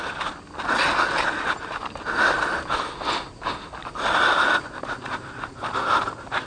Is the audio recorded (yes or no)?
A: yes